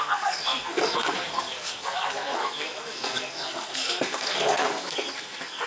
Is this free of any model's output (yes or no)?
no